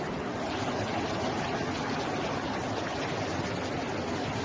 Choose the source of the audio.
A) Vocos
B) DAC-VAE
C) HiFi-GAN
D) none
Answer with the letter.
D